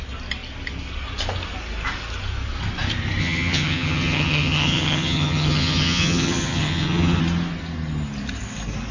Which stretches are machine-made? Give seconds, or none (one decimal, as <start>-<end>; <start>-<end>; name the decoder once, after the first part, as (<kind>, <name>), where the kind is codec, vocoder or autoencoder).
3.2-7.2 (vocoder, HiFi-GAN)